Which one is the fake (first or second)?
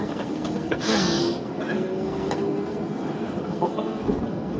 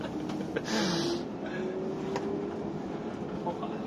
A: first